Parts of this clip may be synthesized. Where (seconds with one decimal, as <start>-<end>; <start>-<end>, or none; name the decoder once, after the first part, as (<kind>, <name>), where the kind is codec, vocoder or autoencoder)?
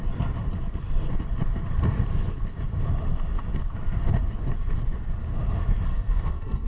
5.9-6.7 (codec, SNAC)